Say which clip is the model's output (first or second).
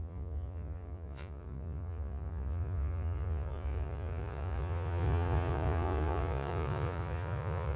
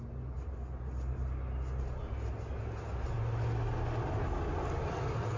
first